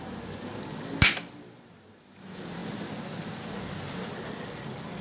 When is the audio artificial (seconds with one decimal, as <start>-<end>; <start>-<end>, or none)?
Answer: none